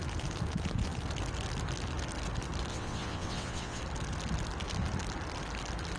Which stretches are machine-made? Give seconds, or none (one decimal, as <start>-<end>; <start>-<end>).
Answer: 2.7-3.8